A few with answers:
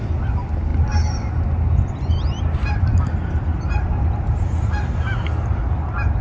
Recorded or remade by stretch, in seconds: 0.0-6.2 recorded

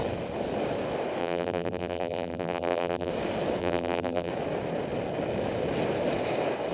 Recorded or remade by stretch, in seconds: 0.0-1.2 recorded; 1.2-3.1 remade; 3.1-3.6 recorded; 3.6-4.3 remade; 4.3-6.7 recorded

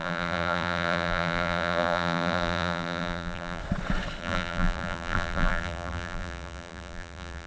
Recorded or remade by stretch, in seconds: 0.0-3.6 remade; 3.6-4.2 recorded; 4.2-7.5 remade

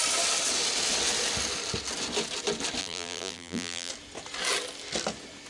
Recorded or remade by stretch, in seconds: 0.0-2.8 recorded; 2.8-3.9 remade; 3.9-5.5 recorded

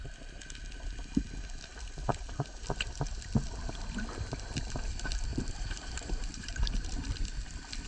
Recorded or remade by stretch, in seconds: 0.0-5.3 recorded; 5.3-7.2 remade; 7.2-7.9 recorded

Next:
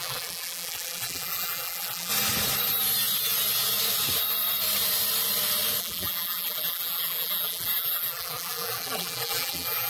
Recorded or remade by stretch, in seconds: 0.0-2.1 remade; 2.1-5.8 recorded; 5.8-9.9 remade

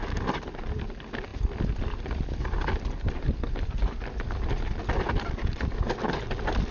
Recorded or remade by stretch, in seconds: 0.0-6.7 recorded